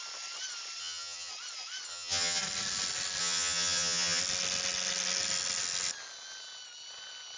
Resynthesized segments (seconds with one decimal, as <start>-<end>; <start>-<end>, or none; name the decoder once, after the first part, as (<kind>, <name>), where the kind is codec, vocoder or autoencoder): 0.8-1.3 (vocoder, HiFi-GAN); 1.9-2.4; 3.2-4.2